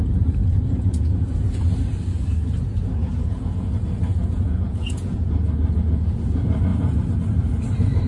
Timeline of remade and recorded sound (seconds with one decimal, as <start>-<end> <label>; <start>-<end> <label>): 0.0-3.0 recorded; 3.0-3.6 remade; 3.6-4.1 recorded; 4.1-5.3 remade; 5.3-8.1 recorded